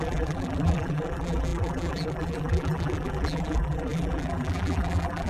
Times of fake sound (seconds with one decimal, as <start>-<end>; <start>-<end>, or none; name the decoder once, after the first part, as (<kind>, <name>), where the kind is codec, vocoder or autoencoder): 0.0-5.3 (vocoder, BigVGAN v2)